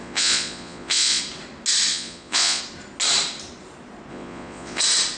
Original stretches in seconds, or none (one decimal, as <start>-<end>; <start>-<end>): 1.2-1.9; 2.6-4.1; 4.8-5.2

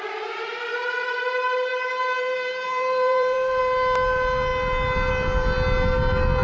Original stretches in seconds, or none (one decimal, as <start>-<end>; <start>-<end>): 0.0-1.7; 3.6-6.4